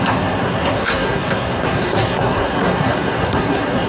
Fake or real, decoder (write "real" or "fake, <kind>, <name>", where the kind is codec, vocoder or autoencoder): fake, codec, SNAC